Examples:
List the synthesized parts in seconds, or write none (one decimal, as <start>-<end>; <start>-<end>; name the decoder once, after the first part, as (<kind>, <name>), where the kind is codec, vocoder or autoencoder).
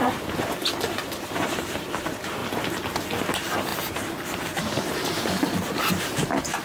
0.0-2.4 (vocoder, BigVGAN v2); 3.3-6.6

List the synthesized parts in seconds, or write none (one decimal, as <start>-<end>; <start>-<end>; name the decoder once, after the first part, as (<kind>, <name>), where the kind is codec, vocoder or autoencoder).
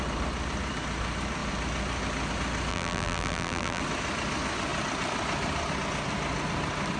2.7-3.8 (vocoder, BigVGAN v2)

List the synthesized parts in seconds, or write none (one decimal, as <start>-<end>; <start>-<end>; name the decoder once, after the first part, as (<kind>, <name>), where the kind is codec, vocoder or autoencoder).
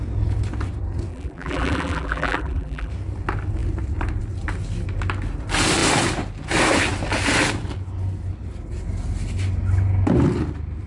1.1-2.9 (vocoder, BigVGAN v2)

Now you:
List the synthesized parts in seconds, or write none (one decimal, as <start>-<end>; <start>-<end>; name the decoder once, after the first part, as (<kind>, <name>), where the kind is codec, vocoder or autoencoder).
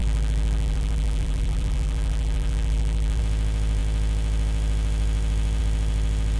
0.0-3.2 (vocoder, BigVGAN v2)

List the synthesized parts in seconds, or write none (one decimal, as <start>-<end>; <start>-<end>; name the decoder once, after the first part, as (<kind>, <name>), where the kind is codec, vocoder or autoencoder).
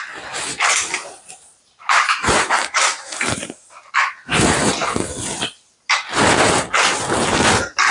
1.0-3.9 (vocoder, BigVGAN v2)